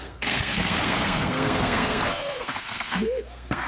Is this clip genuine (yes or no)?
no